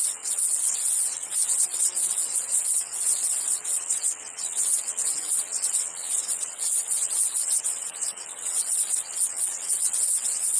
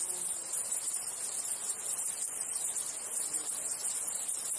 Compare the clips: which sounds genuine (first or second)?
second